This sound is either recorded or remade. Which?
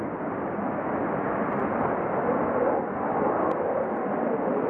recorded